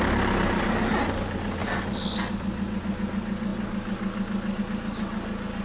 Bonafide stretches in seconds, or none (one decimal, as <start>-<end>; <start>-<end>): 0.0-5.6